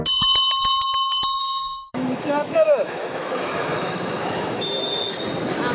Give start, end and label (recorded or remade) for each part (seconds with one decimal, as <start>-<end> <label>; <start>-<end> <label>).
0.0-1.4 recorded; 1.4-4.8 remade; 4.8-5.7 recorded